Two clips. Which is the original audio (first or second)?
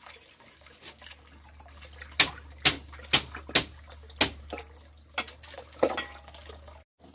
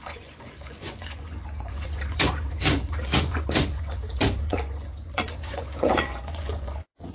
first